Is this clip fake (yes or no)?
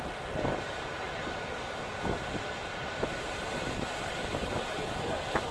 no